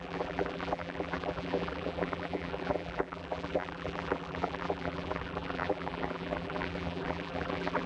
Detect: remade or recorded remade